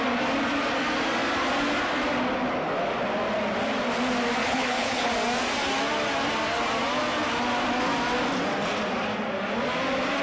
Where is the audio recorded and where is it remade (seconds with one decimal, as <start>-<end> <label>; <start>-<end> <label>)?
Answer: 0.0-4.4 recorded; 4.4-5.1 remade; 5.1-10.2 recorded